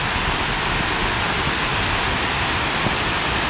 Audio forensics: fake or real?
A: real